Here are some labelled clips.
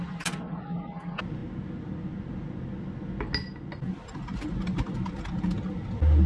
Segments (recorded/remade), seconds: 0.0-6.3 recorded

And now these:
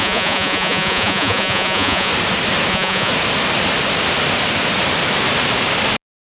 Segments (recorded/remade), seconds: 0.0-2.1 remade; 2.1-2.7 recorded; 2.7-3.1 remade; 3.1-6.3 recorded